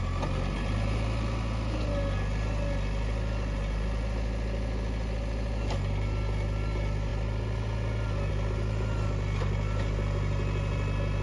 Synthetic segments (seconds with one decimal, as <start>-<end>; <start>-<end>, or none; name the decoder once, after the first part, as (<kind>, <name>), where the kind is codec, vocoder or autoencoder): none

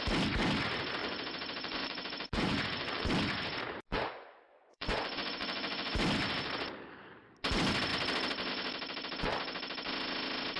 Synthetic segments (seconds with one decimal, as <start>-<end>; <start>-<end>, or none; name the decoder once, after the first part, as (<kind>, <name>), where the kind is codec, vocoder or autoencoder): 1.0-3.1 (vocoder, Vocos); 3.9-5.9

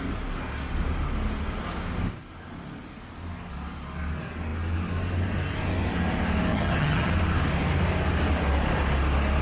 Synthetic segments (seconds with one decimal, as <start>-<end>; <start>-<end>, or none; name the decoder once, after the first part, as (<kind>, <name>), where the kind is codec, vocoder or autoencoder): 6.5-7.1 (vocoder, HiFi-GAN)

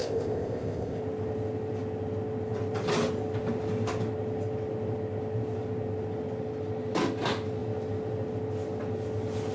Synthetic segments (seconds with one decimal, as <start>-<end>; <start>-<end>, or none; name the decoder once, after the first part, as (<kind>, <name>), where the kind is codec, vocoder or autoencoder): 0.0-1.0 (codec, ZipCodec)

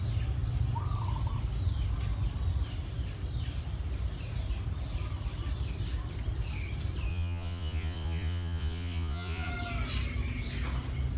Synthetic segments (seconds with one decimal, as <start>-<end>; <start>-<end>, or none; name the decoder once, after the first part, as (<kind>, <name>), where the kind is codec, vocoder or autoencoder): 7.1-9.5 (vocoder, Vocos)

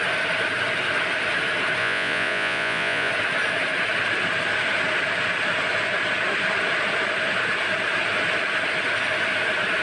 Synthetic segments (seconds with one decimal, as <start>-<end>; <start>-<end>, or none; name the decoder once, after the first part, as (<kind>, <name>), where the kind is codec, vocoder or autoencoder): 1.8-3.1 (vocoder, Vocos)

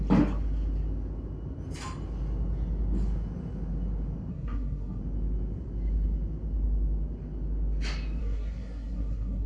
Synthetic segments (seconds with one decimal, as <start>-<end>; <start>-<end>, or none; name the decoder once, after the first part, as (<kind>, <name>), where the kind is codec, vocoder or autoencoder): 4.3-5.0 (codec, SNAC); 8.2-9.5